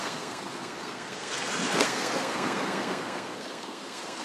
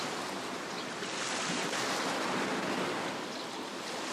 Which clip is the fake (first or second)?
first